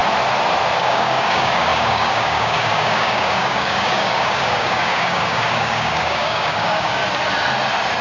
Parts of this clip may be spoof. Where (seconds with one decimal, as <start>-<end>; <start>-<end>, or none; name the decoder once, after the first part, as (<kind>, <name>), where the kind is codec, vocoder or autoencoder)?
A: 0.8-7.0 (codec, DAC)